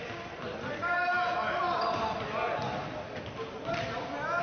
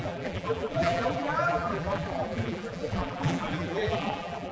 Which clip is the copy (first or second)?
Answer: second